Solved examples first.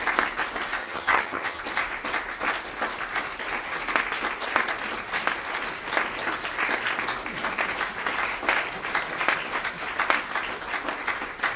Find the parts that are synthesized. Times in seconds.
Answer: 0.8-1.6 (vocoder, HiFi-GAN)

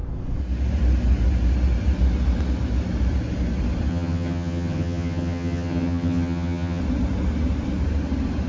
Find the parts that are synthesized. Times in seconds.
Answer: 3.9-6.8 (vocoder, HiFi-GAN)

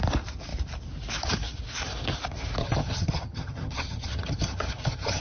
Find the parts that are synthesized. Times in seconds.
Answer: 2.6-5.2 (vocoder, HiFi-GAN)

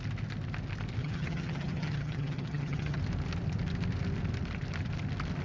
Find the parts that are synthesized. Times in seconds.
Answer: 1.0-3.0 (vocoder, HiFi-GAN)

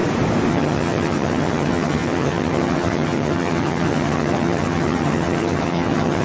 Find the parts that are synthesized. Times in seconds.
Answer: 0.5-6.2 (vocoder, HiFi-GAN)

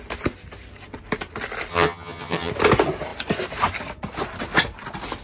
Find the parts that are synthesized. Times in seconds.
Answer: 1.7-2.5 (vocoder, HiFi-GAN)